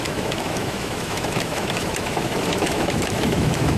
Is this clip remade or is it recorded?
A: remade